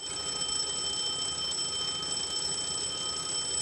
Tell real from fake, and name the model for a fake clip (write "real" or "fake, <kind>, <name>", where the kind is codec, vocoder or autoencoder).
real